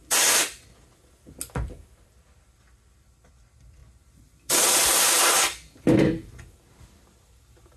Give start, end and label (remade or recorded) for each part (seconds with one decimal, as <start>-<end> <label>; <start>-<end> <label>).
0.0-7.8 recorded